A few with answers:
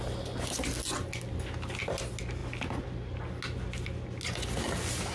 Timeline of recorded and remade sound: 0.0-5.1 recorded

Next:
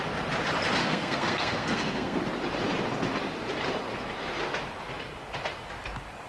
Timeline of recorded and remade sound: 0.0-0.8 recorded; 0.8-2.2 remade; 2.2-6.3 recorded

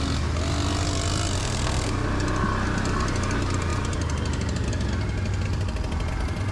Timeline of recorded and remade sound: 0.0-1.4 recorded; 1.4-1.9 remade; 1.9-6.5 recorded

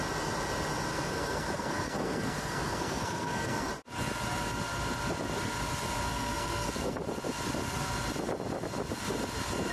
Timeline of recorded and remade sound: 0.0-0.9 recorded; 0.9-3.7 remade; 3.7-6.1 recorded; 6.1-7.0 remade; 7.0-9.7 recorded

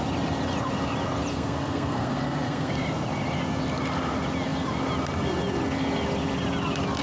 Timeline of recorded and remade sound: 0.0-1.3 recorded; 1.3-2.7 remade; 2.7-7.0 recorded

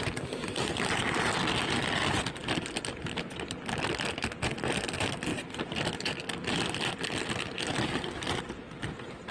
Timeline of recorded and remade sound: 0.0-9.3 recorded

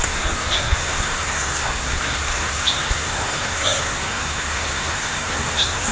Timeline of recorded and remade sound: 0.0-5.9 remade